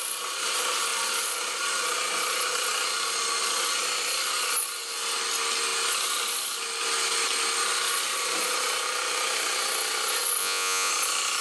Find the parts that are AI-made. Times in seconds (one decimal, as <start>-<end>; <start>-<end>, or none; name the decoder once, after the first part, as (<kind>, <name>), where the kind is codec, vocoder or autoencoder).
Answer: 10.4-10.9 (vocoder, Vocos)